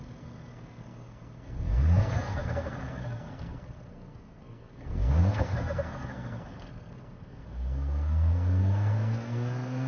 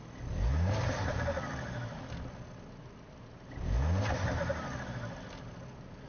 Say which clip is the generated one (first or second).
first